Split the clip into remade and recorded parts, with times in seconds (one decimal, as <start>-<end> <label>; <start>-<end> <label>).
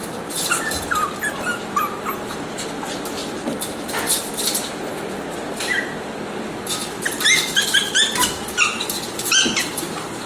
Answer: 0.0-10.3 recorded